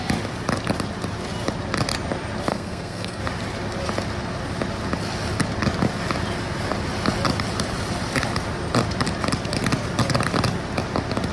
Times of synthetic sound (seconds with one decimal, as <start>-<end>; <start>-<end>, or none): 2.5-3.2